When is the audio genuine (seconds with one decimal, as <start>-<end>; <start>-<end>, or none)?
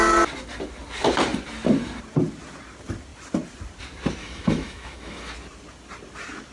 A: 0.0-4.2; 5.3-6.5